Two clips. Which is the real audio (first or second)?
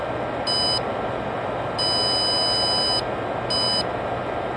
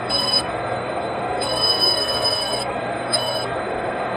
first